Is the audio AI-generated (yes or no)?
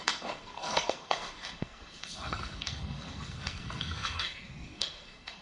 yes